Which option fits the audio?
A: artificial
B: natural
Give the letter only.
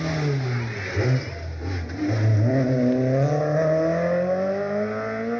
B